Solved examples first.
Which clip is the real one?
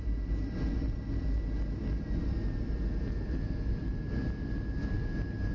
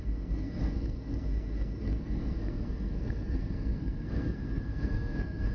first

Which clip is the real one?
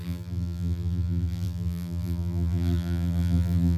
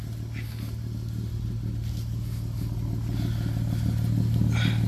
second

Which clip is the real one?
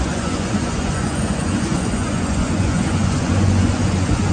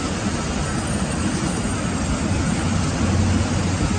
second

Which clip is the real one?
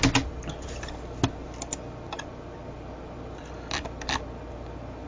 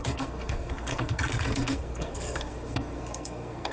first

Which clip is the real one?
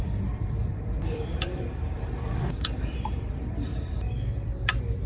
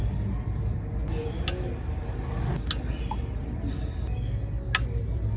second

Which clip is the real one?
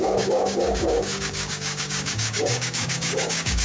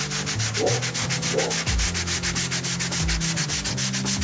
second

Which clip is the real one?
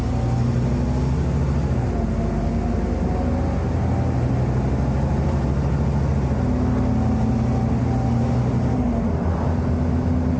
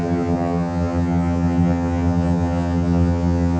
first